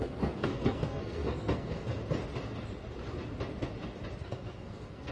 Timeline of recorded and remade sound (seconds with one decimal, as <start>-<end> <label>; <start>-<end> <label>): 0.0-2.0 remade; 2.0-4.2 recorded; 4.2-5.1 remade